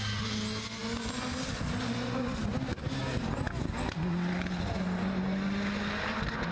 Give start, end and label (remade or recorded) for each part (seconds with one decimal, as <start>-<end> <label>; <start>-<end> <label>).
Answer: 0.0-6.5 recorded